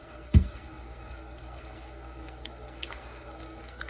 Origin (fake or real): fake